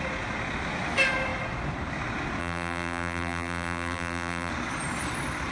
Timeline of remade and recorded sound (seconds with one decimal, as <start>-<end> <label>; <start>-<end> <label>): 0.0-2.4 recorded; 2.4-4.5 remade; 4.5-5.5 recorded